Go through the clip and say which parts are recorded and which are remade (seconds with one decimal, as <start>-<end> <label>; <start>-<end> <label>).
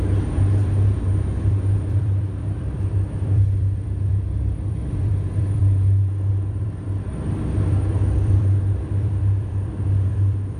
0.0-5.6 remade; 5.6-6.3 recorded; 6.3-10.6 remade